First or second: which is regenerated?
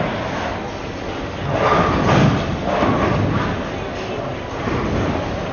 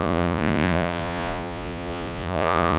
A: second